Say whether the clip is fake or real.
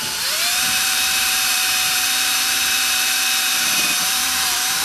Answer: fake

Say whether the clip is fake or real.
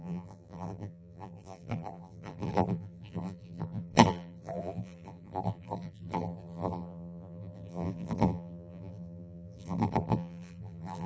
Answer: fake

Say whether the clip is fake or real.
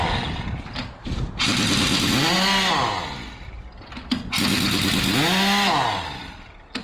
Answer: real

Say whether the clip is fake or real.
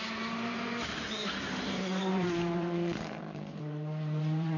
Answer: fake